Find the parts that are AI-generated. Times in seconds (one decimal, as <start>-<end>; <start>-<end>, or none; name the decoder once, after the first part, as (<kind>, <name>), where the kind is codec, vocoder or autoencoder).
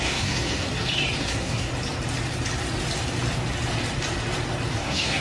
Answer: 0.0-0.7 (codec, SNAC); 1.2-1.7; 4.8-5.2